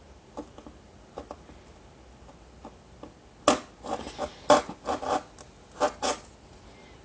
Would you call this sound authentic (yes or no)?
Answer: yes